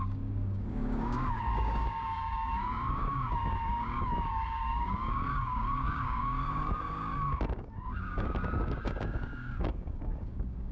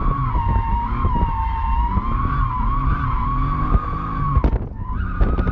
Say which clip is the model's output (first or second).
first